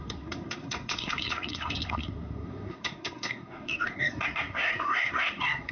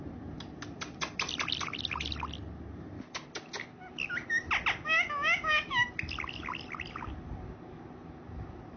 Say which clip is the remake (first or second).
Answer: first